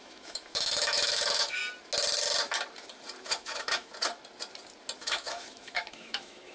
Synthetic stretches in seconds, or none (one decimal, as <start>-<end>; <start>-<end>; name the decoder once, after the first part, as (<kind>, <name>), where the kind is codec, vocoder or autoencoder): 0.0-1.6 (autoencoder, DAC-VAE); 3.2-3.9; 5.0-6.5